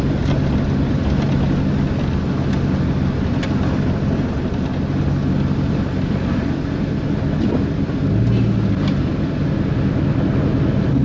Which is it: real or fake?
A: real